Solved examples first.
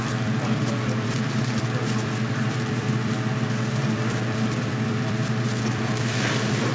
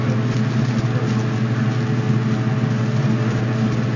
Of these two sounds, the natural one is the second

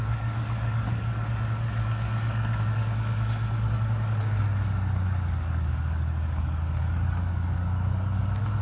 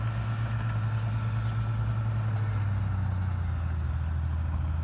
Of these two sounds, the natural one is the second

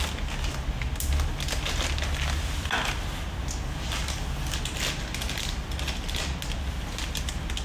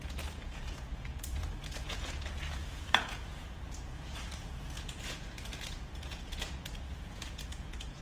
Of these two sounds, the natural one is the first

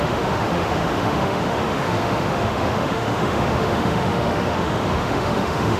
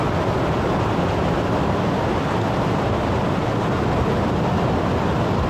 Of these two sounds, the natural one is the second